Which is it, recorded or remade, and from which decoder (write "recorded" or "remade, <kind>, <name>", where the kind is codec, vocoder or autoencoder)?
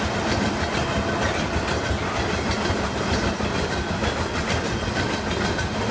recorded